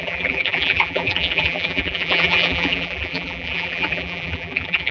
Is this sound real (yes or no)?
no